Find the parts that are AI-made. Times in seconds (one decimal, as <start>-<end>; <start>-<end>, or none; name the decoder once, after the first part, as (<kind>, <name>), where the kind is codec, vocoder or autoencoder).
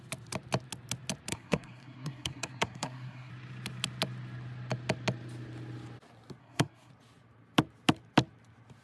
1.3-3.3 (codec, SNAC); 6.4-6.9